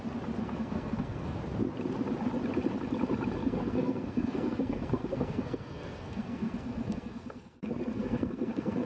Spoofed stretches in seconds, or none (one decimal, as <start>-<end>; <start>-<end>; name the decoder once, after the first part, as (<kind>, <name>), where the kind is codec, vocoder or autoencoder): 0.4-1.4 (codec, SNAC); 3.4-8.9

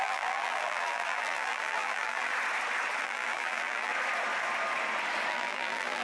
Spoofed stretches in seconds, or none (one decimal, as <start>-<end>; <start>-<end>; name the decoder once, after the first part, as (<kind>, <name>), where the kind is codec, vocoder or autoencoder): 0.0-2.3 (vocoder, BigVGAN v2); 3.0-3.9; 5.3-6.0

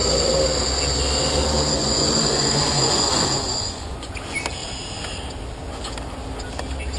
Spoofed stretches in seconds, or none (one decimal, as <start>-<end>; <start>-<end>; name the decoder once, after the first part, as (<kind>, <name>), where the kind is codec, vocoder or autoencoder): 1.8-4.1 (vocoder, Vocos)

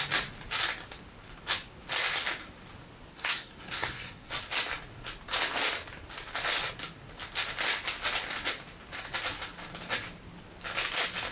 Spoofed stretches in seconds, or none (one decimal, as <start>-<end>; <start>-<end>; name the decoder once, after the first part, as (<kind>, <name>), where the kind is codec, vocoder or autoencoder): 3.1-4.3 (codec, SNAC)

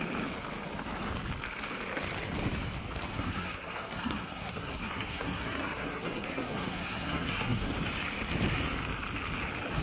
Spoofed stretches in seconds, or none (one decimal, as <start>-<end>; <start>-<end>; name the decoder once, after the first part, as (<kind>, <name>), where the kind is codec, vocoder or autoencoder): 3.1-7.7 (codec, SNAC)

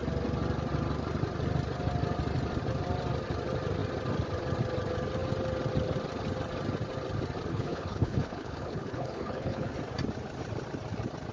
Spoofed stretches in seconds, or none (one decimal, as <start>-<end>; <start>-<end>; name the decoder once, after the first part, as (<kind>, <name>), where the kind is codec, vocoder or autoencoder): 7.5-9.7 (codec, HILCodec)

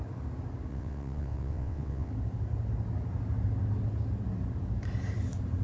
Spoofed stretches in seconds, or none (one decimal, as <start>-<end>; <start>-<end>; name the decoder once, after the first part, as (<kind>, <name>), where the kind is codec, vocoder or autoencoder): 0.7-2.1 (vocoder, WaveNeXt)

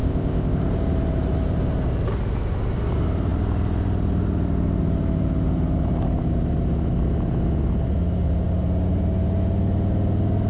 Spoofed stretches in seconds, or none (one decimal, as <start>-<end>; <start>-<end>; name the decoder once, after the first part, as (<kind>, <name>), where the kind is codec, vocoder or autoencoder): 0.0-0.6 (codec, ZipCodec)